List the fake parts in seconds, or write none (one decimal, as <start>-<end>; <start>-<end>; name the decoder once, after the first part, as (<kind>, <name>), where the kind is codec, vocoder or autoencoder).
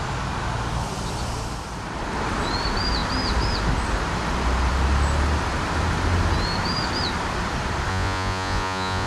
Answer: 7.9-9.1 (vocoder, Vocos)